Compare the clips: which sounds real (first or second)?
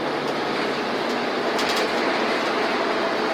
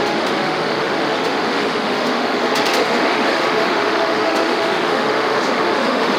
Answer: first